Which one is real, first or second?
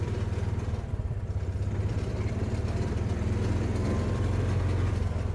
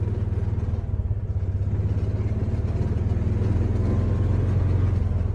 second